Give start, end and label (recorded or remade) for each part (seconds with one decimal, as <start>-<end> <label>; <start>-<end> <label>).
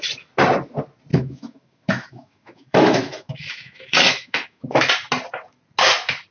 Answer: 0.0-1.1 recorded; 1.1-4.9 remade; 4.9-6.3 recorded